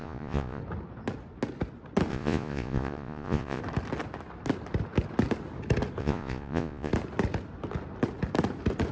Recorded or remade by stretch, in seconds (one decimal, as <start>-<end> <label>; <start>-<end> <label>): 0.0-0.6 remade; 0.6-2.1 recorded; 2.1-3.6 remade; 3.6-6.0 recorded; 6.0-6.9 remade; 6.9-8.9 recorded